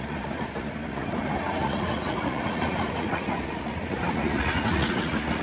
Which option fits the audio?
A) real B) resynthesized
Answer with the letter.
B